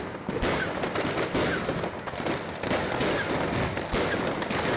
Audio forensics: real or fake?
real